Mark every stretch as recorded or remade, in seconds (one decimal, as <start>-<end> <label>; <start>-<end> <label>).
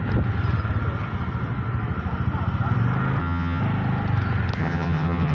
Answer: 0.0-3.2 recorded; 3.2-3.6 remade; 3.6-4.6 recorded; 4.6-5.3 remade